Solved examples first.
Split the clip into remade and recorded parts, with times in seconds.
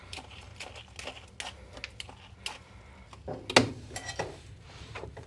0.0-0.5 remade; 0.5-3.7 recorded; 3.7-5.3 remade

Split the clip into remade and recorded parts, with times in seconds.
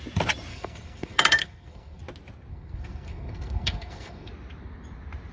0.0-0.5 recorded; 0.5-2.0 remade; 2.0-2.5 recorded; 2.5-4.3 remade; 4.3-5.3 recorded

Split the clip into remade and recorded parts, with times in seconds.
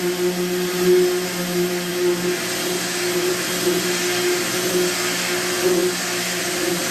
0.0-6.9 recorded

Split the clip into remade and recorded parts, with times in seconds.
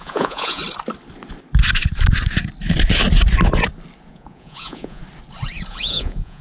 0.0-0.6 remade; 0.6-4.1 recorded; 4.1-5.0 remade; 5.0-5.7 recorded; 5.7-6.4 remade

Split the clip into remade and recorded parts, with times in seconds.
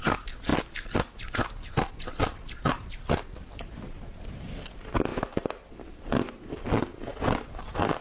0.0-8.0 recorded